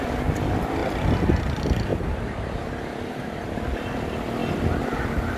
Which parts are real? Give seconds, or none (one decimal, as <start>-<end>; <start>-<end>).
0.0-5.4